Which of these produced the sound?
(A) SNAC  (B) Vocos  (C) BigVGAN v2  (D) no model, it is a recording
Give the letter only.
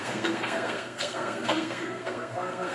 A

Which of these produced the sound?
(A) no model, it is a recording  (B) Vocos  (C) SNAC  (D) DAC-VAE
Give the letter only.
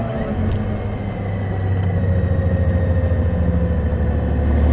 A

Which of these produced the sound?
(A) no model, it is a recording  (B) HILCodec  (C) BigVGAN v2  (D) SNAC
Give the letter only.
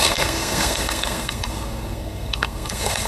D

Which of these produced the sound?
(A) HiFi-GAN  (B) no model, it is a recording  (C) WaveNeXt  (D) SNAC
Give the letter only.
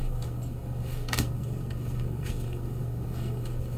D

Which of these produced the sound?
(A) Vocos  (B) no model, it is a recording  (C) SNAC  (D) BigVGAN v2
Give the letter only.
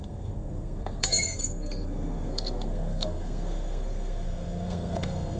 C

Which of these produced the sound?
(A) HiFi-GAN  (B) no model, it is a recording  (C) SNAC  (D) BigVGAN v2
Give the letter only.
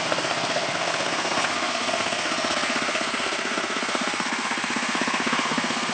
C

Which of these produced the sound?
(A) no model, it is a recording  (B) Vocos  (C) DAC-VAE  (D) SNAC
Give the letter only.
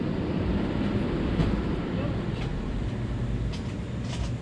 A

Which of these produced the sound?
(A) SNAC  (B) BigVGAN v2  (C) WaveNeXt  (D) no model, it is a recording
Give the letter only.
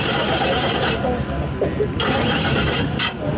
D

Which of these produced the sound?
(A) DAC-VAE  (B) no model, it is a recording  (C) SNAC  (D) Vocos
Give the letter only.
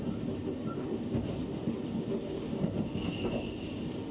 B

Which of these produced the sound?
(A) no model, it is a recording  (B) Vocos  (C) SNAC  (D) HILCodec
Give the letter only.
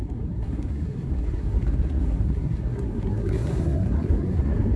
C